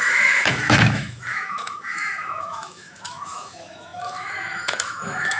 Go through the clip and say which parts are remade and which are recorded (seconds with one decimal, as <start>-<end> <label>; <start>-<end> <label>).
0.0-5.4 remade